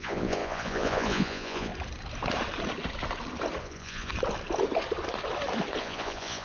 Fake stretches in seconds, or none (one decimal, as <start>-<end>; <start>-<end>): 0.0-1.7; 3.6-4.1; 5.8-6.4